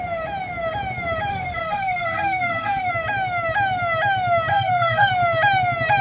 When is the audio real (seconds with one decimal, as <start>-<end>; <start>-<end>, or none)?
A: 0.0-1.3; 2.9-4.5; 5.1-6.0